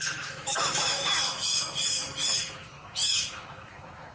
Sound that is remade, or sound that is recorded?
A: remade